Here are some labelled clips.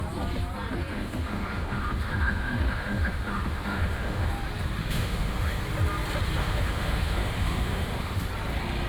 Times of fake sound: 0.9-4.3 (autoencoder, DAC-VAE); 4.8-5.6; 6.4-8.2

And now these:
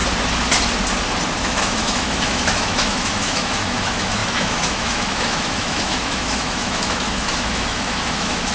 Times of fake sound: 1.4-8.5 (autoencoder, DAC-VAE)

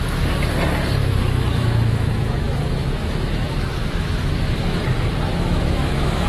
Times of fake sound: 1.0-4.8 (autoencoder, DAC-VAE); 5.3-6.3

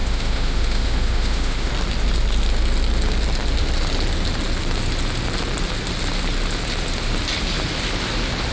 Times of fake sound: 0.0-1.7 (autoencoder, DAC-VAE)

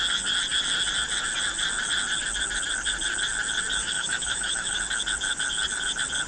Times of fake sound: 3.8-4.8 (autoencoder, DAC-VAE)

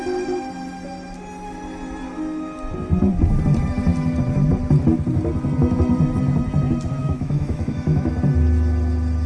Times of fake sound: 7.0-8.1 (autoencoder, DAC-VAE)

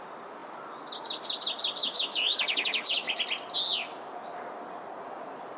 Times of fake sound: 1.8-3.2 (autoencoder, DAC-VAE)